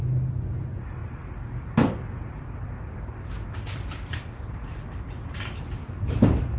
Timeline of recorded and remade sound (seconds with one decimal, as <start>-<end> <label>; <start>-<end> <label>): 0.0-6.6 recorded